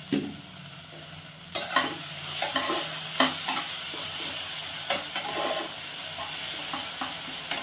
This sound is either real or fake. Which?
real